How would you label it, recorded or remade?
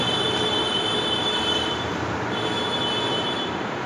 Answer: remade